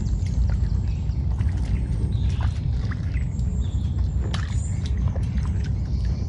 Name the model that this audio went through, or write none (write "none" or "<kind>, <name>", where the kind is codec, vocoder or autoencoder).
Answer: none